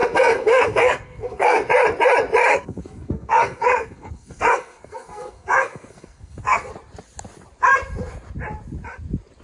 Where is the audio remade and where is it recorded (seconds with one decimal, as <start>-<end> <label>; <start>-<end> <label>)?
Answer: 0.0-1.7 remade; 1.7-2.5 recorded; 2.5-6.7 remade; 6.7-9.4 recorded